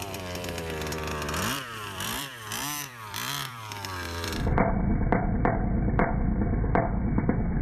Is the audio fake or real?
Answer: fake